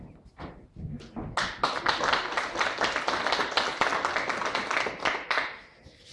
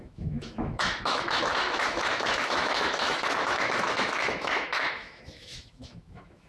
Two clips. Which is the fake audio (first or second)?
second